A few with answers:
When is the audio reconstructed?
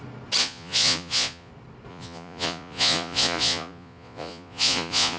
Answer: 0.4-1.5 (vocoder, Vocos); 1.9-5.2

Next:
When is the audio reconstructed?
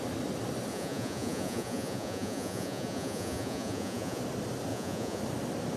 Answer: 0.7-4.2 (vocoder, Vocos); 4.7-5.2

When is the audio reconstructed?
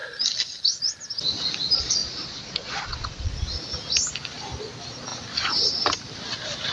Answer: 2.0-3.3 (vocoder, Vocos)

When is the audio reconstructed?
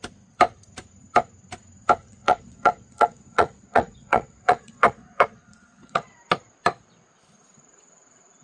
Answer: 2.0-6.2 (vocoder, Vocos)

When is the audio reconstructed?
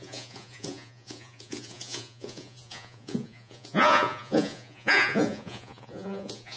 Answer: 0.0-6.6 (vocoder, Vocos)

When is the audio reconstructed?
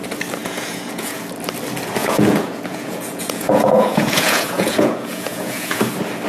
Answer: 0.4-1.2 (vocoder, Vocos); 2.0-5.8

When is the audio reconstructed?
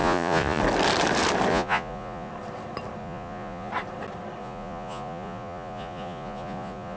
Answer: 0.0-0.6 (vocoder, Vocos); 1.5-2.3; 3.0-3.7; 4.4-7.0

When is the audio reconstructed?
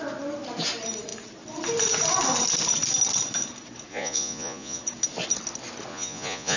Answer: 3.9-4.8 (vocoder, Vocos); 5.9-6.6